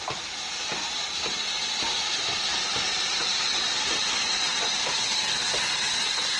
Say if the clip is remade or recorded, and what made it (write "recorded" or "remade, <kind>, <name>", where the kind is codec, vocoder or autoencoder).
recorded